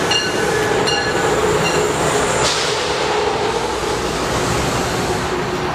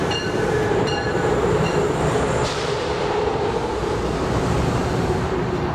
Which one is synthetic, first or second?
second